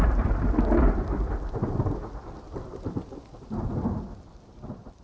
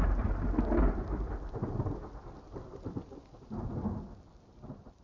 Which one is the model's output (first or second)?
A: first